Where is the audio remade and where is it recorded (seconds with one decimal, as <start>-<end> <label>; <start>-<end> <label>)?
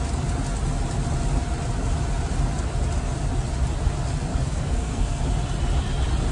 0.0-4.3 recorded; 4.3-5.2 remade; 5.2-6.3 recorded